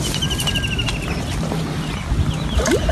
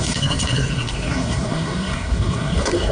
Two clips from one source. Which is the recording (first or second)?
first